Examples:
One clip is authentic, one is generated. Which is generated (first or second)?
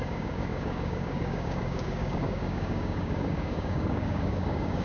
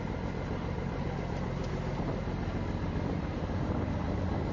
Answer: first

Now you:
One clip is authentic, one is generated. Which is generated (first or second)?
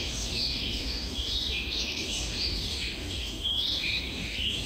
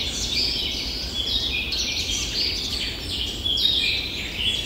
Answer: first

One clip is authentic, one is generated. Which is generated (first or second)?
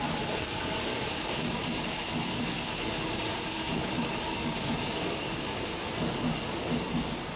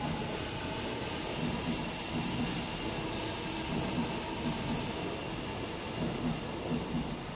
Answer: first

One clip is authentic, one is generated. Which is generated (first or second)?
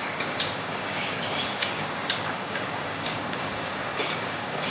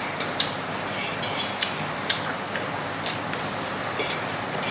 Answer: first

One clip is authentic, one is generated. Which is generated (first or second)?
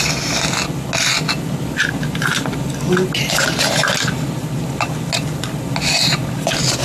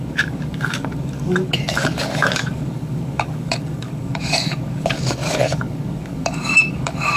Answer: second